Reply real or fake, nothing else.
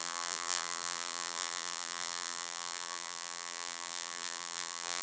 fake